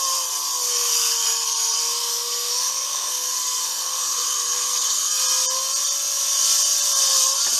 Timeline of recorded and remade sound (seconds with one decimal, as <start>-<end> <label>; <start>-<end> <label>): 0.0-0.6 recorded; 0.6-5.2 remade; 5.2-7.6 recorded